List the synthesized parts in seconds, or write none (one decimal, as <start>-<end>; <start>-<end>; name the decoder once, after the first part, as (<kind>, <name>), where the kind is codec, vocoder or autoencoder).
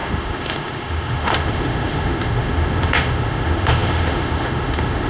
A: 0.0-5.1 (autoencoder, DAC-VAE)